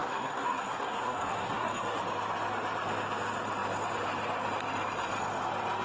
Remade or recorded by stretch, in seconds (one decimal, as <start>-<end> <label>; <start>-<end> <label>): 0.0-2.0 remade; 2.0-5.8 recorded